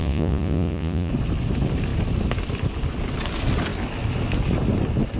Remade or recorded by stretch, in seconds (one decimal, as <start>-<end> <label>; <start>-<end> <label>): 0.0-1.1 remade; 1.1-5.2 recorded